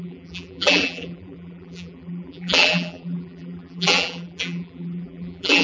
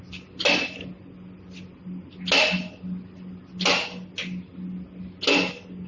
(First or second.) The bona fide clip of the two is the second